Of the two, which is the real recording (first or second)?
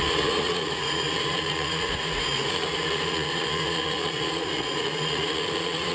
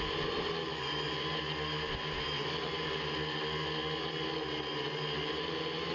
second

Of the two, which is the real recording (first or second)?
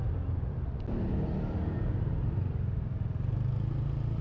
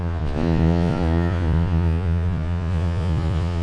first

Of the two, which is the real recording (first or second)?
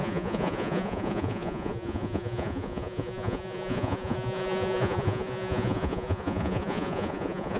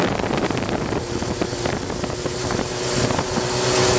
second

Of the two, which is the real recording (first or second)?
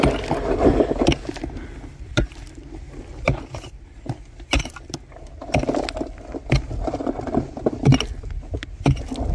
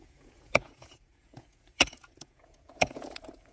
first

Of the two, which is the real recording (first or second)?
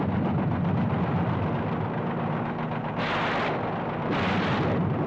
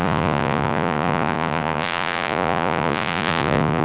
first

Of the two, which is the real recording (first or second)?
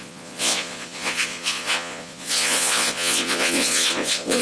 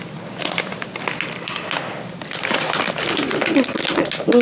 second